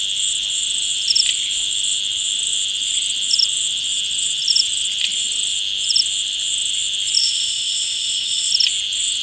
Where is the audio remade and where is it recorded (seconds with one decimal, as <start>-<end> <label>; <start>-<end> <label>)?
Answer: 0.0-7.2 recorded; 7.2-8.5 remade; 8.5-9.2 recorded